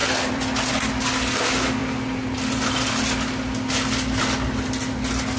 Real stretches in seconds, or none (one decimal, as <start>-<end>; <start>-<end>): 0.7-5.4